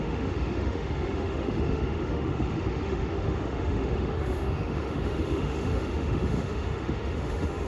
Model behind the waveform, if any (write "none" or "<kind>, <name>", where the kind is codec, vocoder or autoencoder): autoencoder, DAC-VAE